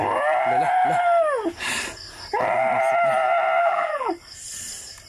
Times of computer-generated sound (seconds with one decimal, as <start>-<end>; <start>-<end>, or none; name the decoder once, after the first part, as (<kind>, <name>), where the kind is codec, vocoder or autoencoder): 3.6-4.1 (vocoder, BigVGAN v2)